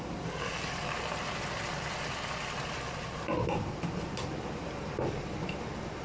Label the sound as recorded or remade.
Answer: recorded